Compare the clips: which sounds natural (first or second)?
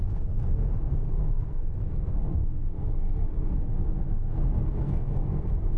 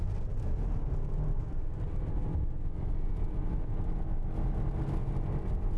second